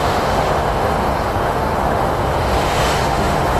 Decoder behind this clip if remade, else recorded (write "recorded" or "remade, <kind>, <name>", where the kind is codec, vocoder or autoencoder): remade, autoencoder, DAC-VAE